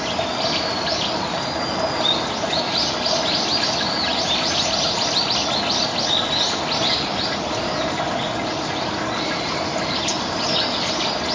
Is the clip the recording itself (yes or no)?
yes